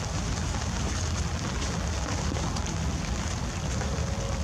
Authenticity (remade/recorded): recorded